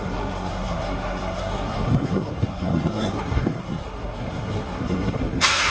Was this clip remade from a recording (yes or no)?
yes